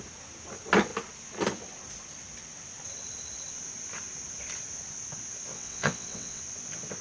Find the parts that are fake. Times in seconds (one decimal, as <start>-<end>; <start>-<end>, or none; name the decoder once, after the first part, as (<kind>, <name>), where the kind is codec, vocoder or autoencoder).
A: 5.5-6.4 (vocoder, WaveNeXt)